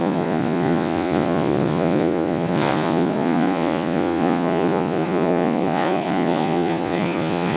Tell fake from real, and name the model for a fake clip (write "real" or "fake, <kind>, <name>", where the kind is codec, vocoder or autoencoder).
fake, vocoder, Vocos